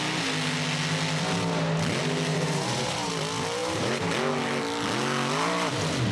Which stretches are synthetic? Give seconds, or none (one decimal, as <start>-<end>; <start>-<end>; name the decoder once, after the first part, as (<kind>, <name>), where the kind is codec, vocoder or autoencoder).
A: 2.3-3.1 (vocoder, BigVGAN v2); 3.6-4.1